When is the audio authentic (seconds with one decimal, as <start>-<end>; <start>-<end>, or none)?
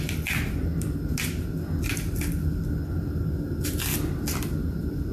0.0-5.1